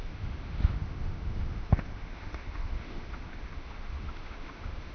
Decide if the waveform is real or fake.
fake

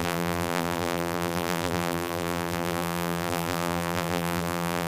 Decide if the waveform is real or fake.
fake